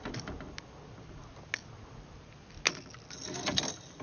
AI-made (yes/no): no